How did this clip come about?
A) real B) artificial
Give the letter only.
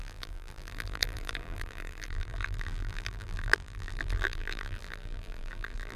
B